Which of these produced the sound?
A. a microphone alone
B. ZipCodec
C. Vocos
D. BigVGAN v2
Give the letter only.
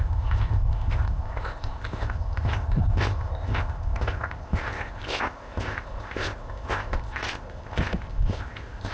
B